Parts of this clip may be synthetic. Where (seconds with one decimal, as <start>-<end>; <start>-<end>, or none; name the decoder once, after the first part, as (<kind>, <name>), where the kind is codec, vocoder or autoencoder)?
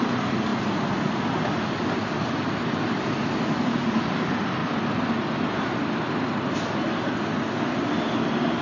none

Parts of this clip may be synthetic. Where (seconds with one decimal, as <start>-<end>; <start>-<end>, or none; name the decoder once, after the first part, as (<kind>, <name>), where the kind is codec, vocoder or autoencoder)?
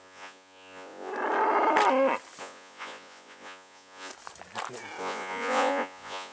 0.0-1.1 (vocoder, Vocos); 2.4-4.1; 5.0-6.3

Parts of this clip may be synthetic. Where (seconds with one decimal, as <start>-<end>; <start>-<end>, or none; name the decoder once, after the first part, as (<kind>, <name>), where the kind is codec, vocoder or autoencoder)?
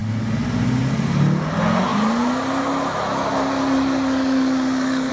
none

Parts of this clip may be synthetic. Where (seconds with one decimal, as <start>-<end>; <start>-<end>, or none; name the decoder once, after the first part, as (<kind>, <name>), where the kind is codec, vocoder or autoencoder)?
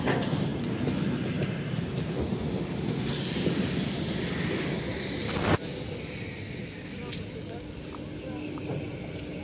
none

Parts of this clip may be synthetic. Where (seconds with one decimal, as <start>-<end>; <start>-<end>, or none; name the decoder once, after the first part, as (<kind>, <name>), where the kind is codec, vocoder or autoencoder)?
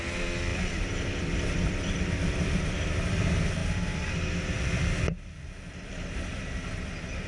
0.5-2.7 (vocoder, BigVGAN v2)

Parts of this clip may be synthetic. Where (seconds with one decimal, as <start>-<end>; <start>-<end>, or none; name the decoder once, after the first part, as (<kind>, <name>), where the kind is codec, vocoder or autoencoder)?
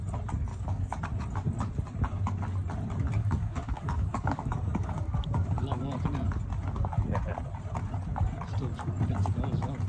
0.5-1.0 (codec, DAC); 3.2-5.8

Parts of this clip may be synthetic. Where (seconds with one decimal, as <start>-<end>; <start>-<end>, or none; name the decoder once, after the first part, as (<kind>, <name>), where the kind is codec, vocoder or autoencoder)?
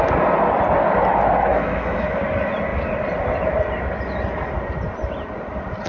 1.5-2.2 (autoencoder, DAC-VAE)